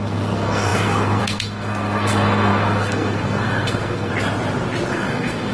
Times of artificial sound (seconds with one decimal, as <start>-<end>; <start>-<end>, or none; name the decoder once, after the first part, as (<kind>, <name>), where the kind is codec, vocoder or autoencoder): 0.0-4.1 (codec, SNAC); 4.9-5.5